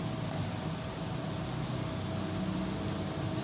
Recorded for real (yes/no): yes